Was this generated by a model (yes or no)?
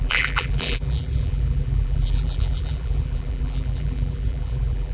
yes